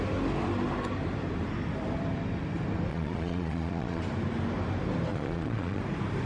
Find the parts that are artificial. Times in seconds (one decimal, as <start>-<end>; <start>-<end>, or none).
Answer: 2.9-4.0; 5.1-5.8